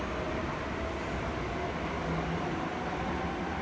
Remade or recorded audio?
recorded